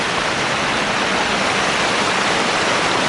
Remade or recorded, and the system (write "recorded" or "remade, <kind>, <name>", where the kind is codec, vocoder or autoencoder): recorded